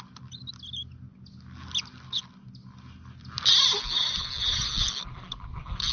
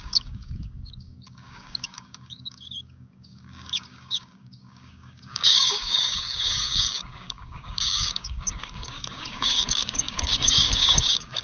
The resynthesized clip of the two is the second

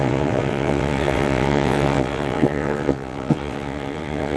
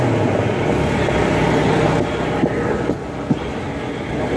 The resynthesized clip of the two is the first